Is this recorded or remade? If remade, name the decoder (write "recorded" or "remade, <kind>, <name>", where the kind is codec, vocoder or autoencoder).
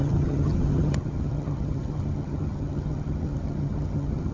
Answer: remade, vocoder, HiFi-GAN